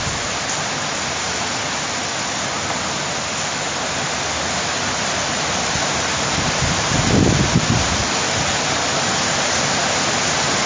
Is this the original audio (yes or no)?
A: yes